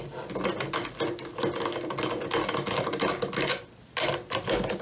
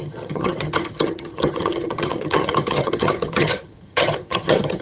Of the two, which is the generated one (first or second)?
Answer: second